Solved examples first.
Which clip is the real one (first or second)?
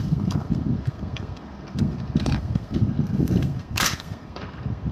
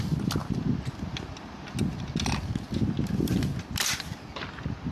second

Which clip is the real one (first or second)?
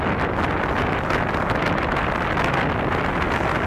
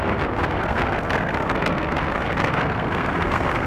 first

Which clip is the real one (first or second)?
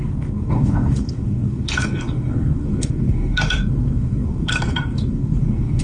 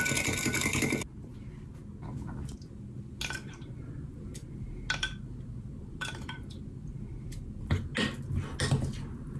second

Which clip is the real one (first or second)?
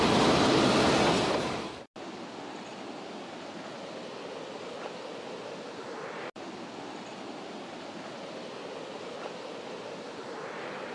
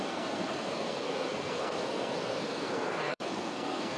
first